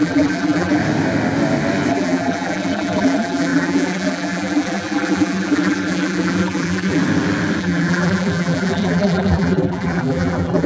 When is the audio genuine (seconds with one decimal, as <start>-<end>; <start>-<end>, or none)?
0.8-1.9; 7.0-7.6